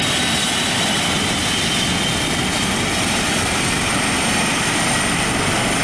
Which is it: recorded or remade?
recorded